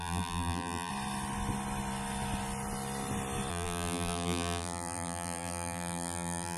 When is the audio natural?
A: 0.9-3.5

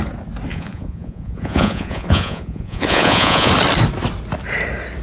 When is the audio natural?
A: 0.0-0.5; 3.5-5.0

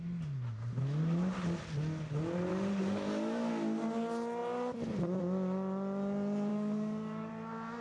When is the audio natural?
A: 0.0-2.5; 3.5-6.5; 7.3-7.8

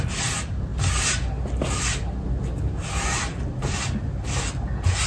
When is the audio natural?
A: 0.0-5.1